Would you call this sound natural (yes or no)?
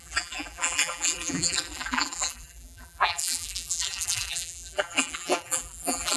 no